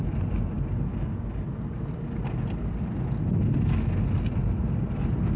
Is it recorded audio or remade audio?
recorded